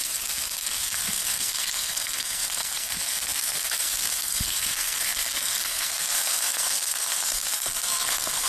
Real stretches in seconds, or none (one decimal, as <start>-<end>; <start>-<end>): none